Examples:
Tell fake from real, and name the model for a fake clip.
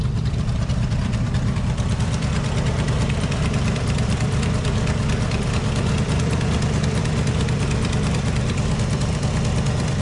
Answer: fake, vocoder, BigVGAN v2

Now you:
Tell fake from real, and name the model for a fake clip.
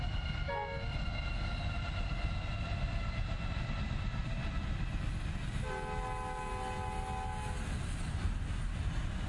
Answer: real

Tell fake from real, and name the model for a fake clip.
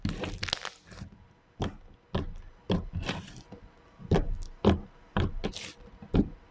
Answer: real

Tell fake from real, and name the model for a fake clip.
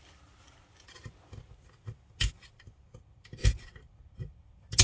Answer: real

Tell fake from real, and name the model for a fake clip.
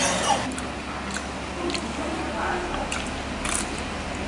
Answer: real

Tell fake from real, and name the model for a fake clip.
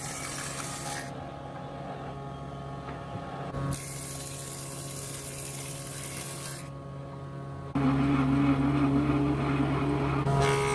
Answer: real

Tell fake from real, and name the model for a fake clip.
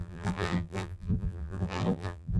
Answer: fake, vocoder, BigVGAN v2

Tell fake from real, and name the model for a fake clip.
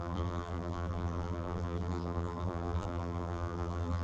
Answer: fake, vocoder, BigVGAN v2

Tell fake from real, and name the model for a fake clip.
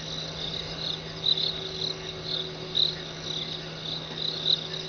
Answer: real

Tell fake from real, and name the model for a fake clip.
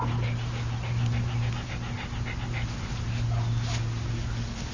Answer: real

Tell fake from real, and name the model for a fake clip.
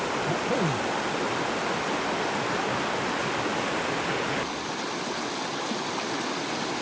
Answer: real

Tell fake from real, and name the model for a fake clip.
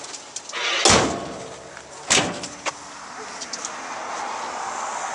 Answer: real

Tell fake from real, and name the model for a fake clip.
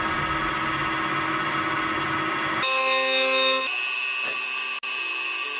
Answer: real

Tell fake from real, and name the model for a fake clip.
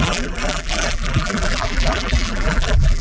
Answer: fake, vocoder, BigVGAN v2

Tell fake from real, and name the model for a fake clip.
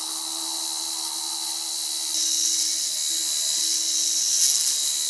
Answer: real